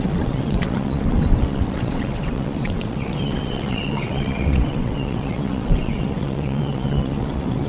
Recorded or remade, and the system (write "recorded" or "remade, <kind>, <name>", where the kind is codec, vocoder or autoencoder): remade, vocoder, WaveNeXt